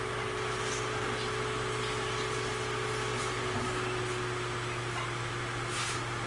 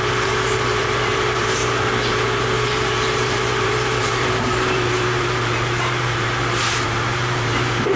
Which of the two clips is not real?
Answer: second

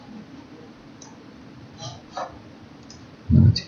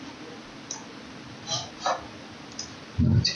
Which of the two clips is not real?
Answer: first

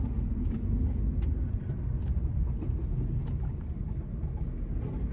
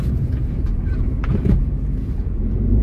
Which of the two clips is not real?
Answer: second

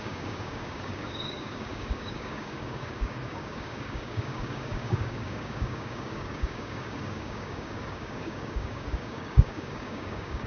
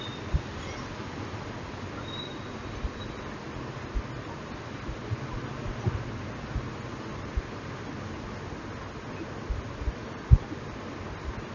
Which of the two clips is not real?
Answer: first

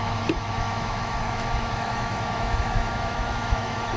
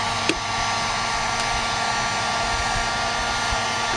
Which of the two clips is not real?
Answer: first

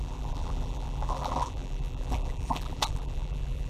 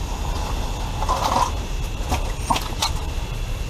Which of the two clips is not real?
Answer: first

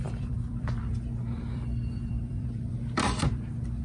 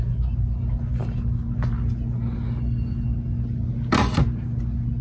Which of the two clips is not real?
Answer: first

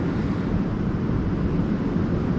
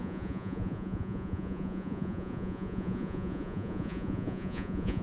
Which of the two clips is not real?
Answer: second